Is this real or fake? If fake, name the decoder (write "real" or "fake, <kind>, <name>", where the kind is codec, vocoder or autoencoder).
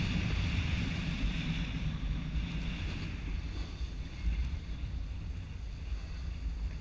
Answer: real